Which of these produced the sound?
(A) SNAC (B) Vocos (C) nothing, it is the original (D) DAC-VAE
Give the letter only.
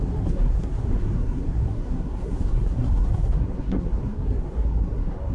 A